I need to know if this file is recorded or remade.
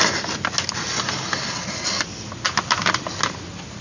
recorded